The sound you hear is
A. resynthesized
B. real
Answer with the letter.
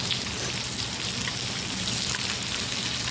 B